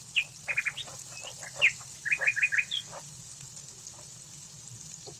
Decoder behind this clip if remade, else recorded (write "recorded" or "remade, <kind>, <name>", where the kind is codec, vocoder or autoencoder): recorded